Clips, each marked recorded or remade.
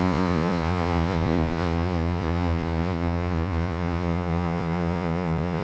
remade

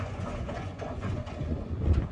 remade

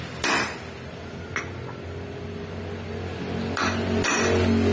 recorded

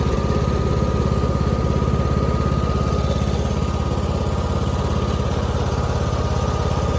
recorded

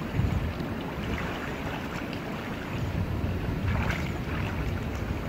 recorded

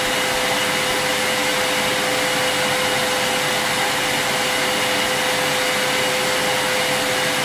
recorded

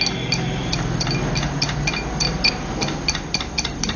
recorded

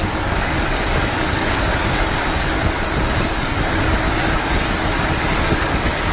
remade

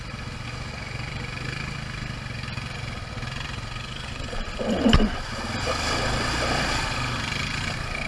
recorded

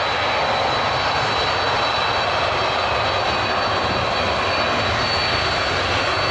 recorded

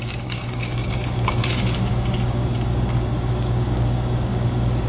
remade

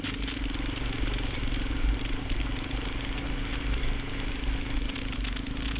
recorded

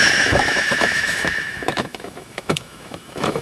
remade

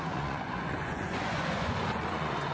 remade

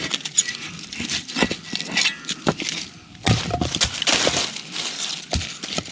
recorded